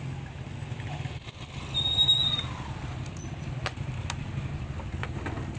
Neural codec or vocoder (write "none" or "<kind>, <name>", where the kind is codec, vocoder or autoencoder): none